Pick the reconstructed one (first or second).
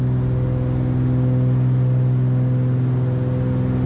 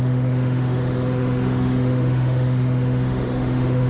second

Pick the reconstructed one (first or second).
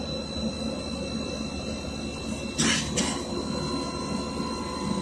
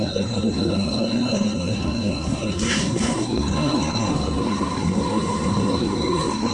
second